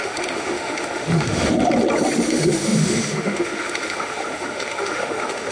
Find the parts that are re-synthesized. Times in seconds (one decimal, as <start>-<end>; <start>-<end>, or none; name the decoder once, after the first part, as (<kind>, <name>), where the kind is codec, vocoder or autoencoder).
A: 0.0-1.5 (autoencoder, DAC-VAE); 2.3-5.5